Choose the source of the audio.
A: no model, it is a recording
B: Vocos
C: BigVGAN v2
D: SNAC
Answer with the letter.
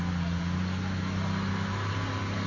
A